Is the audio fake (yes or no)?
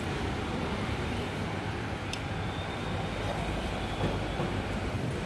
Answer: yes